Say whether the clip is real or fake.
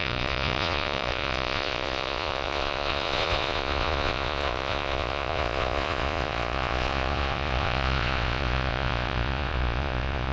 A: fake